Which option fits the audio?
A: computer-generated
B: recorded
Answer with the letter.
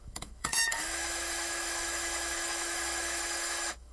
A